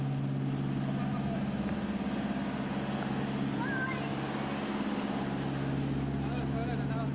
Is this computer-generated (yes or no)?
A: no